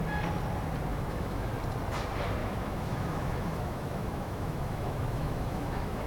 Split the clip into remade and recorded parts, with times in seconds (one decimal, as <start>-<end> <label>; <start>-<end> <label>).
0.0-0.9 recorded; 0.9-1.5 remade; 1.5-2.4 recorded; 2.4-6.1 remade